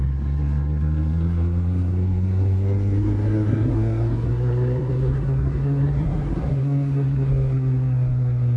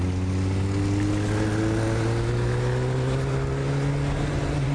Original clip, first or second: second